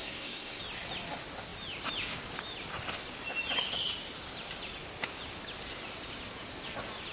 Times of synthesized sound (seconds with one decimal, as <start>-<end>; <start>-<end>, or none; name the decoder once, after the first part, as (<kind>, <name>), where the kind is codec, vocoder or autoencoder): 0.0-0.6 (codec, SNAC)